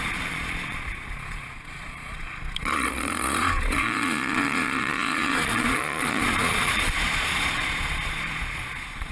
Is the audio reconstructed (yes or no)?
yes